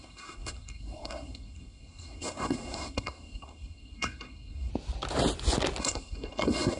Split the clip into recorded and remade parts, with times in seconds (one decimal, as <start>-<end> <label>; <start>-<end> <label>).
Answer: 0.0-4.7 remade; 4.7-5.8 recorded; 5.8-6.8 remade